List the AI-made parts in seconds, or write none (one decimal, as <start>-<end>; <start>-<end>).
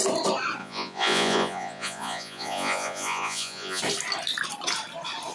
0.6-3.8